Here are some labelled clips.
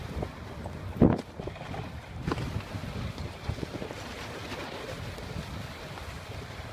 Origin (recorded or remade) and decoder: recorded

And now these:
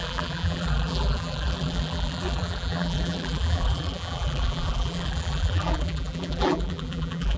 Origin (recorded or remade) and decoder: remade, vocoder, BigVGAN v2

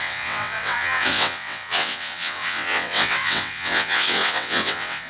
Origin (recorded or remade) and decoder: remade, vocoder, WaveNeXt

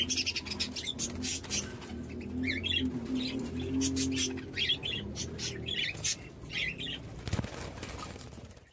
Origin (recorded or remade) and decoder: recorded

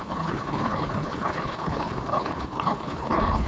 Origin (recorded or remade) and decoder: remade, codec, HILCodec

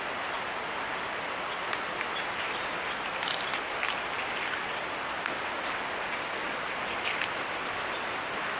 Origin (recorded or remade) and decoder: recorded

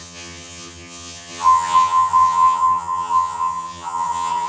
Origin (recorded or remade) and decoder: remade, vocoder, HiFi-GAN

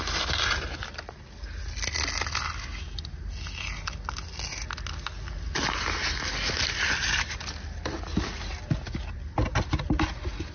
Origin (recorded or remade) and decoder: recorded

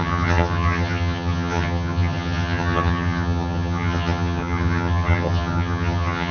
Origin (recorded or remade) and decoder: remade, vocoder, HiFi-GAN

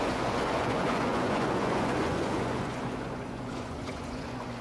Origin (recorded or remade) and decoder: remade, vocoder, Vocos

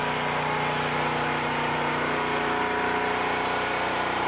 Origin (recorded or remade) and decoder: recorded